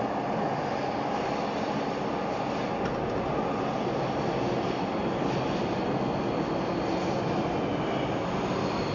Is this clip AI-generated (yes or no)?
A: no